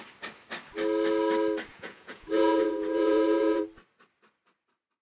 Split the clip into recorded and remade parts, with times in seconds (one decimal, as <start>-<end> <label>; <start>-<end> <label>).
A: 0.0-1.7 recorded; 1.7-3.6 remade; 3.6-5.0 recorded